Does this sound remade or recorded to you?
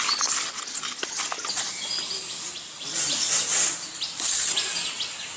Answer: recorded